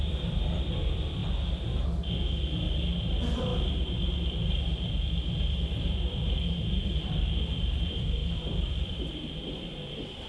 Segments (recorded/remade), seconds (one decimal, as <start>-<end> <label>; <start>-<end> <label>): 0.0-1.2 remade; 1.2-3.1 recorded; 3.1-3.5 remade; 3.5-5.9 recorded; 5.9-10.3 remade

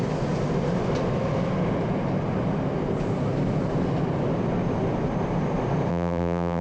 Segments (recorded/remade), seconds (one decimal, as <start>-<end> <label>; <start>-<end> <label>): 0.0-5.9 recorded; 5.9-6.6 remade

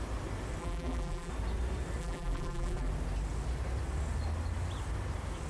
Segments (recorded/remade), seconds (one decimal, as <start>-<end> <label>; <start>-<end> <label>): 0.0-0.6 recorded; 0.6-1.3 remade; 1.3-2.0 recorded; 2.0-2.9 remade; 2.9-5.5 recorded

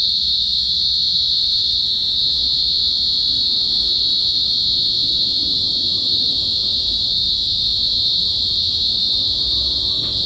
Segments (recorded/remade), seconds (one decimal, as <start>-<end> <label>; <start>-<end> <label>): 0.0-10.3 recorded

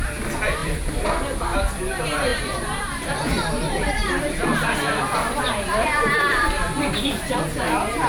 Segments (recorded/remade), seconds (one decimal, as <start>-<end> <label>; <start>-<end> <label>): 0.0-0.6 recorded; 0.6-1.1 remade; 1.1-2.3 recorded; 2.3-5.4 remade; 5.4-6.1 recorded; 6.1-7.4 remade; 7.4-8.1 recorded

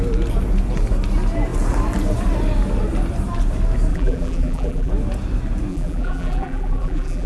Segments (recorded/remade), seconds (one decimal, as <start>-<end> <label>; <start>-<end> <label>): 0.0-3.9 recorded; 3.9-4.9 remade; 4.9-5.7 recorded; 5.7-7.3 remade

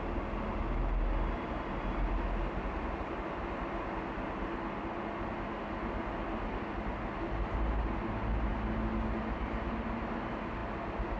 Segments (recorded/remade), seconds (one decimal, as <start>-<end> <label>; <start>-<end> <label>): 0.0-11.2 recorded

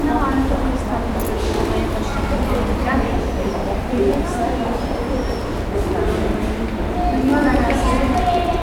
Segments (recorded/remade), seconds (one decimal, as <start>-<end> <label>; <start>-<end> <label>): 0.0-2.1 recorded; 2.1-4.6 remade; 4.6-7.3 recorded; 7.3-8.1 remade; 8.1-8.6 recorded